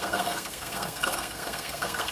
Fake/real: fake